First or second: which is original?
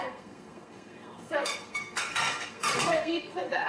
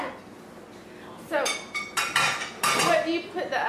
second